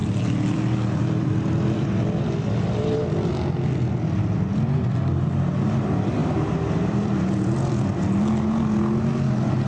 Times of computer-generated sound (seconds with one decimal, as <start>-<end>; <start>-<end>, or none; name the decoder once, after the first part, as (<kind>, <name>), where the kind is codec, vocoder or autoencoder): 0.0-3.3 (vocoder, BigVGAN v2); 6.2-8.2

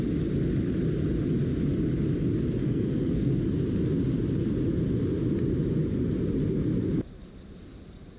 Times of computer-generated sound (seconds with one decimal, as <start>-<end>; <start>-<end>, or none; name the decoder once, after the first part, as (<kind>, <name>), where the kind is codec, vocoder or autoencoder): 2.6-3.4 (codec, SNAC)

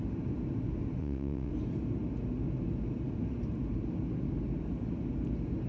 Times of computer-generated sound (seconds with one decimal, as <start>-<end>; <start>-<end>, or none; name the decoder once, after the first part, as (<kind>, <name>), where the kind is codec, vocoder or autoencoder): 1.0-1.5 (vocoder, WaveNeXt)

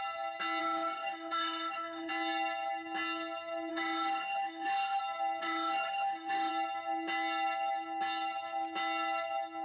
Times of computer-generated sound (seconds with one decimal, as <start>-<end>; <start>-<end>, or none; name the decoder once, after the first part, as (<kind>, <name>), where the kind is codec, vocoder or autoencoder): 0.6-2.1 (autoencoder, DAC-VAE); 3.7-5.0; 5.4-6.5